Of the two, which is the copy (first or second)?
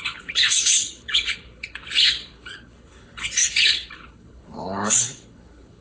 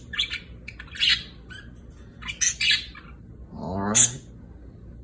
first